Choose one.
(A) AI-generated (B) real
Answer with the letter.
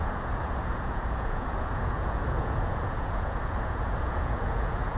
A